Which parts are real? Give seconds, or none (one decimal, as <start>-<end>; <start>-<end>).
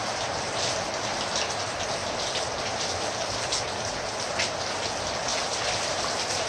0.0-6.5